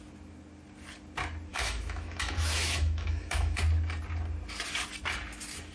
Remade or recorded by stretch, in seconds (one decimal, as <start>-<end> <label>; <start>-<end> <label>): 0.0-1.5 recorded; 1.5-3.6 remade; 3.6-5.7 recorded